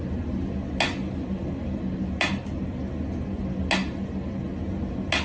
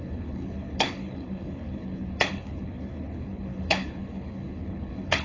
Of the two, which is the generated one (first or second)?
second